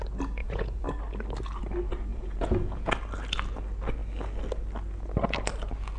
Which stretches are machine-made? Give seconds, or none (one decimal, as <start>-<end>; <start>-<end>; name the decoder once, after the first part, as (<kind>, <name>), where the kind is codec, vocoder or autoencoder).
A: 0.4-0.9 (vocoder, Vocos); 2.1-2.9

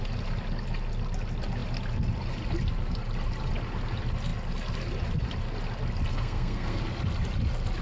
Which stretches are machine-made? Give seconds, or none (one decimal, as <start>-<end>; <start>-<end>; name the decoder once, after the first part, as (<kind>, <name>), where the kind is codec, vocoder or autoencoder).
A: 6.1-6.8 (codec, SNAC)

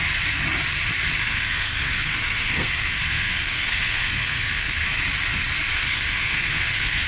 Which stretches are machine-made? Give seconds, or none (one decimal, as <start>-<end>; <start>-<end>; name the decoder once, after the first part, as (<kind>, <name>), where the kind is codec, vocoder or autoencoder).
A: 1.2-5.0 (codec, SNAC); 5.7-7.1

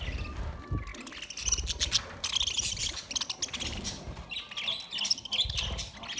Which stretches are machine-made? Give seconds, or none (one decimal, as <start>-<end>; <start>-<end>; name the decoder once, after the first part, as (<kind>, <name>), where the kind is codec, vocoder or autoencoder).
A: none